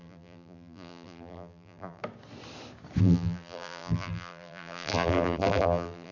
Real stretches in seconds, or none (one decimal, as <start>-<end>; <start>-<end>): 2.0-3.0